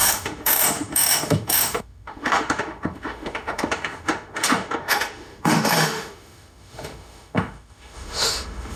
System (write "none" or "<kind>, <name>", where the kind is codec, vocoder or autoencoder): autoencoder, DAC-VAE